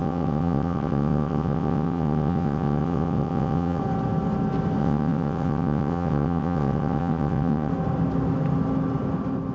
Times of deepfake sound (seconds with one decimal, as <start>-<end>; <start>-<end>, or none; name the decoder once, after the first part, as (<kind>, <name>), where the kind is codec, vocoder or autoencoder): 0.0-3.8 (vocoder, WaveNeXt); 4.8-7.7